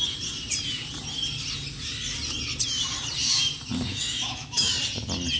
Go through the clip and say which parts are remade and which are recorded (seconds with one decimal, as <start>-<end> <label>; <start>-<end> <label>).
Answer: 0.0-3.9 recorded; 3.9-4.7 remade; 4.7-5.4 recorded